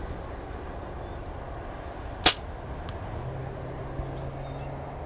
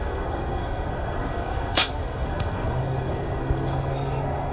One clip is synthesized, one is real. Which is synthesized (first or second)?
second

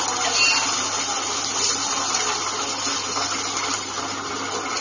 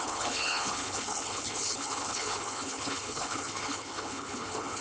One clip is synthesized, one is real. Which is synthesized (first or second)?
second